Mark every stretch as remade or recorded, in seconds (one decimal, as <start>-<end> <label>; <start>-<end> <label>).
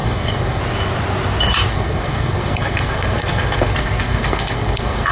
0.0-0.6 remade; 0.6-1.7 recorded; 1.7-5.1 remade